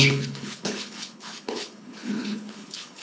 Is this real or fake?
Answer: fake